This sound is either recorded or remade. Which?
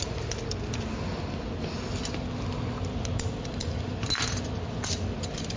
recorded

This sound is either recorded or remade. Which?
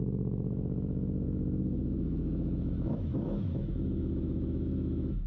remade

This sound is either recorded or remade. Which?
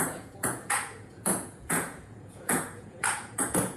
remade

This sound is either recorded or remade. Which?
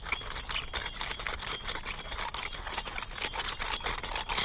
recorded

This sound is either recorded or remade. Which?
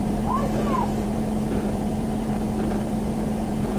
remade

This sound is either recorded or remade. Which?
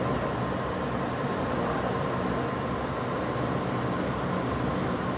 recorded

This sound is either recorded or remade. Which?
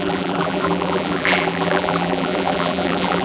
remade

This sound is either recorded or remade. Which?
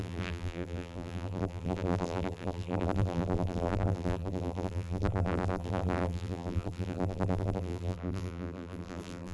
remade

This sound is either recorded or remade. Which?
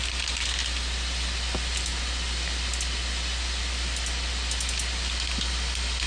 recorded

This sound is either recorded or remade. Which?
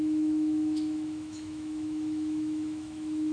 remade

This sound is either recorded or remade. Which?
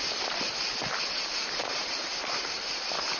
recorded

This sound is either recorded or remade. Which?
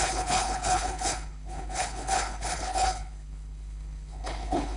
remade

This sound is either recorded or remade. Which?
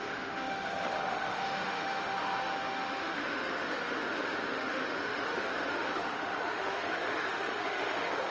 remade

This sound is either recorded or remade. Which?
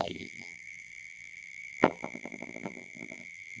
remade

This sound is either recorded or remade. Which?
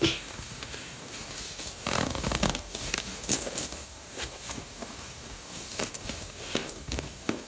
remade